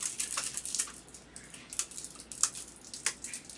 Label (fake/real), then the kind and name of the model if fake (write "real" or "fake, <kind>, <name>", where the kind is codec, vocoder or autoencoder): real